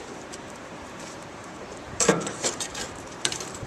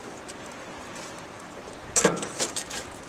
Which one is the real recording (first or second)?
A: second